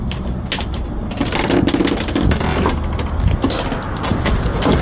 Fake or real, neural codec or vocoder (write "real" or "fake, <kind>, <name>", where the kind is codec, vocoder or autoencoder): real